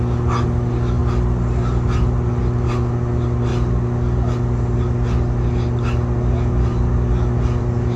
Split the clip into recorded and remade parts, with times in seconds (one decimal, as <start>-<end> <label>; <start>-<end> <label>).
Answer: 0.0-8.0 recorded